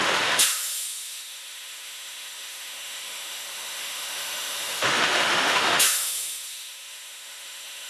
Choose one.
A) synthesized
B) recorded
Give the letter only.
A